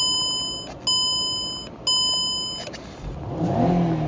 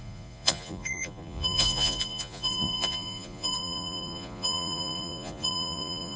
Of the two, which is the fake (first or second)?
second